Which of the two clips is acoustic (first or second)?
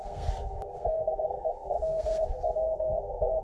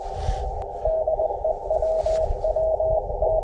second